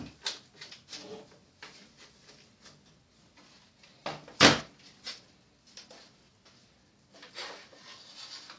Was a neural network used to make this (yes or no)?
no